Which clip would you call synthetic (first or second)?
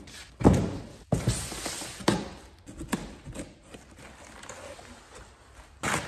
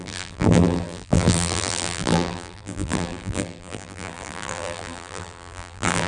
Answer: second